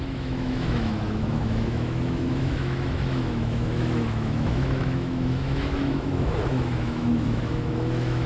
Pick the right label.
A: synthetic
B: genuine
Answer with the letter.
A